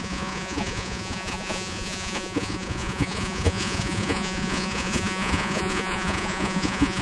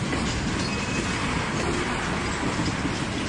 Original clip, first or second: second